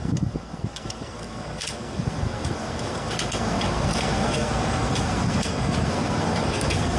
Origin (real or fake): fake